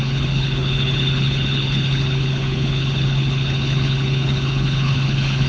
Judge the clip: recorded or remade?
remade